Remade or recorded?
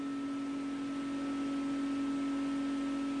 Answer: recorded